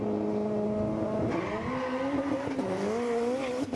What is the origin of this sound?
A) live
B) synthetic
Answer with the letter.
A